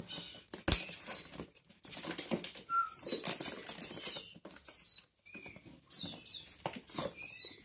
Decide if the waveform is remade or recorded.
recorded